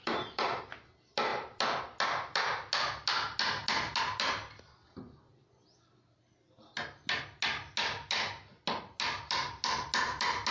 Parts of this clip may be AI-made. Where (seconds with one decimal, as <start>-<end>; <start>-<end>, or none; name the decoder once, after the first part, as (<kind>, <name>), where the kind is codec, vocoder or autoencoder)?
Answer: 0.0-0.6 (vocoder, BigVGAN v2)